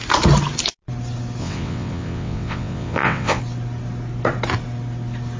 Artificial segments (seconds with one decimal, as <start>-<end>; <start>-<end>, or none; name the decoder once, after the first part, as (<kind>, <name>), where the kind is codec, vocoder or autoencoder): 1.4-3.4 (vocoder, WaveNeXt)